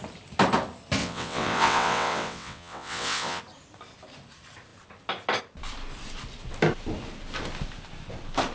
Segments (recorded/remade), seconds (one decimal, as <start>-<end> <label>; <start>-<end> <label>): 0.0-1.0 recorded; 1.0-3.4 remade; 3.4-8.5 recorded